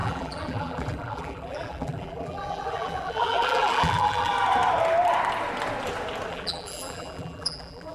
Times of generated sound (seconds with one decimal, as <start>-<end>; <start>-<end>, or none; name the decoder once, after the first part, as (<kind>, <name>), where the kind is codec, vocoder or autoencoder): 0.0-4.3 (vocoder, BigVGAN v2); 6.3-7.9